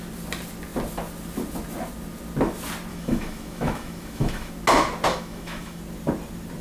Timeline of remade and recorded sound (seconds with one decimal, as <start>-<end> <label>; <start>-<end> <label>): 0.0-2.9 recorded; 2.9-4.5 remade; 4.5-5.1 recorded; 5.1-5.8 remade; 5.8-6.6 recorded